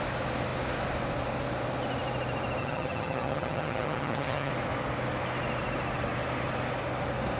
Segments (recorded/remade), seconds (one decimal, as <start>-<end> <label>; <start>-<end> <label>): 0.0-2.6 recorded; 2.6-4.5 remade; 4.5-7.4 recorded